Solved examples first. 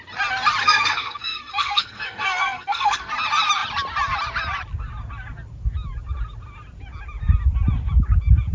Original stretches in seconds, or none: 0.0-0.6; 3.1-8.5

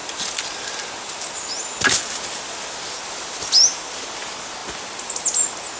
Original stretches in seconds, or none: 0.0-5.8

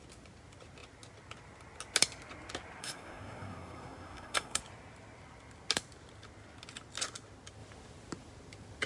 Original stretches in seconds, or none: 0.0-2.8; 4.6-8.9